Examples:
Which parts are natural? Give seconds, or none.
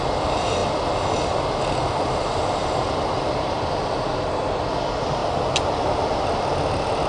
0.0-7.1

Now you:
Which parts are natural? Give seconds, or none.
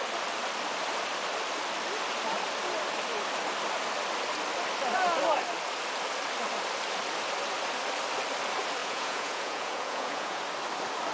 0.0-8.8; 10.4-11.1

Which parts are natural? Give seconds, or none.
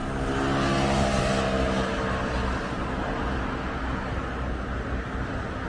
0.0-5.7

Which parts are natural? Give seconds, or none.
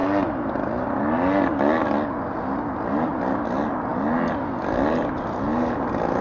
0.0-6.2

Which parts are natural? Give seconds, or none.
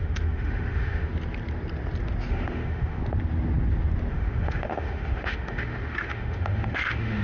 1.1-2.3; 3.0-4.1